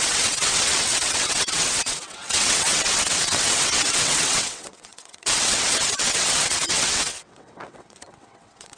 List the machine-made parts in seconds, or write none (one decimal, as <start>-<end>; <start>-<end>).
0.0-8.8